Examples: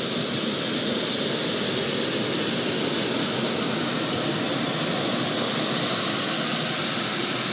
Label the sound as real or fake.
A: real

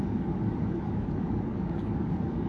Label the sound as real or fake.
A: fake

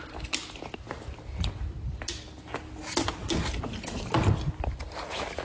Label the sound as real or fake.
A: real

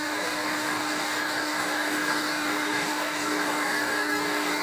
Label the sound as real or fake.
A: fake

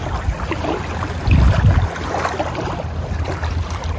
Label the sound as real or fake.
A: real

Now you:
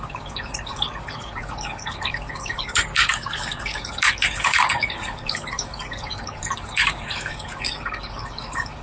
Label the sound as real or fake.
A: fake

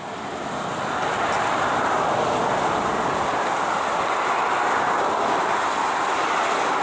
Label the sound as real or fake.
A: real